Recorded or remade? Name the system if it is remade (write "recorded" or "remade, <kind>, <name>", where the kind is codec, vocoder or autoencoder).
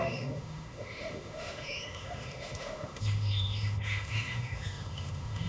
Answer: remade, autoencoder, DAC-VAE